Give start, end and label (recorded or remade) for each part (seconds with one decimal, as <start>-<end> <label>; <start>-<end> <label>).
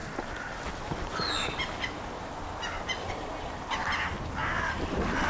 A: 0.0-5.3 recorded